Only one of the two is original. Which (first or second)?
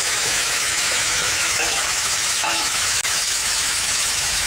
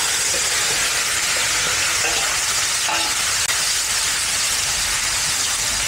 second